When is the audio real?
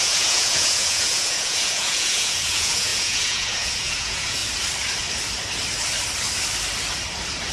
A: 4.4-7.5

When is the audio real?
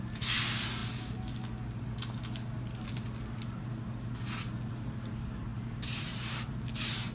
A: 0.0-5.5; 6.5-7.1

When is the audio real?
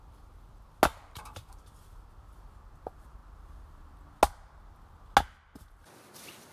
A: 0.0-0.9; 1.6-6.5